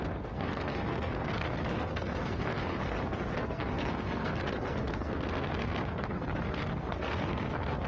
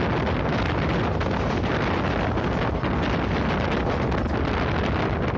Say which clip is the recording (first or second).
second